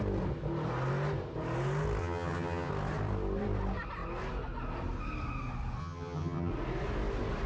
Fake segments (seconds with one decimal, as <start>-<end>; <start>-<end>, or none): 2.0-2.7; 5.8-6.5